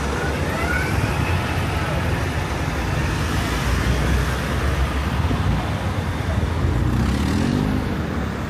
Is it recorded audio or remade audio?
recorded